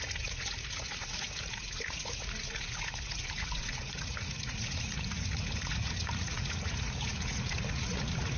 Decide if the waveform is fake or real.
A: fake